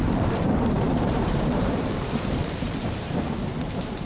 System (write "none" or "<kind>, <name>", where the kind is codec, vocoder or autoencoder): vocoder, BigVGAN v2